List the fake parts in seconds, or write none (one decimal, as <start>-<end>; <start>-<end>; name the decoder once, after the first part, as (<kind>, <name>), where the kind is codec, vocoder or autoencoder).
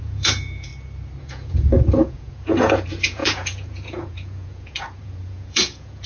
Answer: 0.0-0.7 (vocoder, Vocos); 1.2-6.1